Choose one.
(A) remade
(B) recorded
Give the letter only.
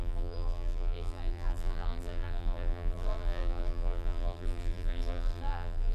A